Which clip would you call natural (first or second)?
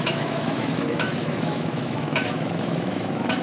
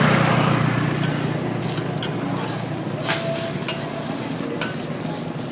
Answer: second